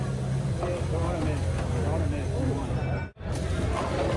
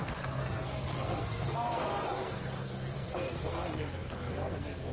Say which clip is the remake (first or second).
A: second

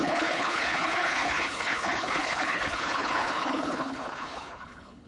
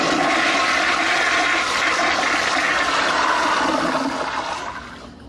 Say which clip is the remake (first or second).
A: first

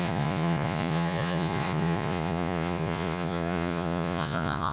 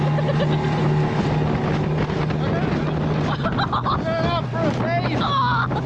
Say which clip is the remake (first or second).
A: first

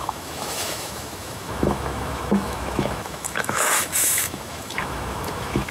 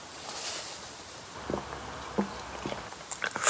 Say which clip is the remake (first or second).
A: first